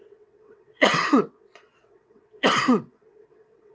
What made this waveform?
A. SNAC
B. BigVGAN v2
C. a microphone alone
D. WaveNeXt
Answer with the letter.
D